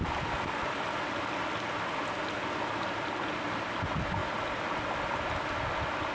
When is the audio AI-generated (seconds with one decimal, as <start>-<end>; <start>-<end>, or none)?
none